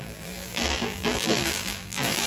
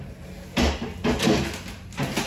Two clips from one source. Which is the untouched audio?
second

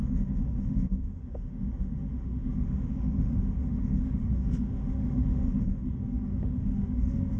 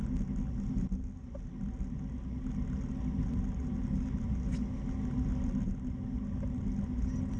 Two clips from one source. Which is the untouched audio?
second